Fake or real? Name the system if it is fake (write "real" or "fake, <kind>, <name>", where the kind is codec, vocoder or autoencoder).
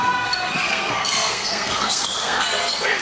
fake, codec, SNAC